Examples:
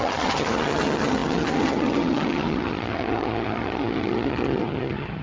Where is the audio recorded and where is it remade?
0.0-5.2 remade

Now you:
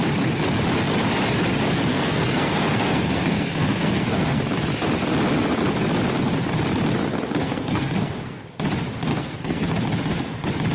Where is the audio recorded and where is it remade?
0.0-1.9 recorded; 1.9-4.4 remade; 4.4-7.4 recorded; 7.4-8.4 remade; 8.4-9.1 recorded; 9.1-9.6 remade; 9.6-10.7 recorded

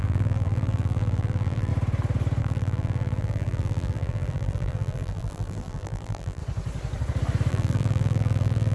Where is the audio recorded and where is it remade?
0.0-1.7 remade; 1.7-2.4 recorded; 2.4-6.4 remade; 6.4-7.5 recorded; 7.5-8.7 remade

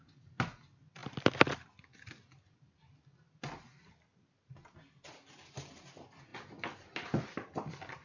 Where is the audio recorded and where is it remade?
0.0-8.0 recorded

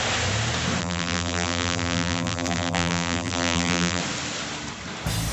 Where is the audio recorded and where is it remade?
0.0-0.8 recorded; 0.8-4.0 remade; 4.0-5.3 recorded

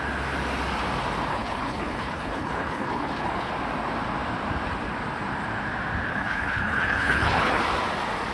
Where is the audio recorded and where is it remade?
0.0-1.3 recorded; 1.3-3.5 remade; 3.5-6.1 recorded; 6.1-7.6 remade; 7.6-8.3 recorded

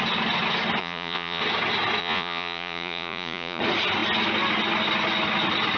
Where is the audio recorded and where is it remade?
0.0-0.8 recorded; 0.8-1.4 remade; 1.4-2.0 recorded; 2.0-3.6 remade; 3.6-5.8 recorded